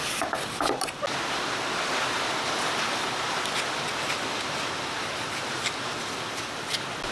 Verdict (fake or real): real